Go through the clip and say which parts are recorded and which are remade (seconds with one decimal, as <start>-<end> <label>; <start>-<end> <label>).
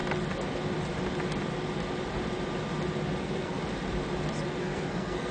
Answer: 0.0-3.2 recorded; 3.2-3.6 remade; 3.6-4.6 recorded; 4.6-5.3 remade